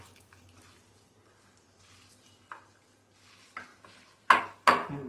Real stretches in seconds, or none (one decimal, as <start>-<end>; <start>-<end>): 0.0-3.7; 4.4-5.1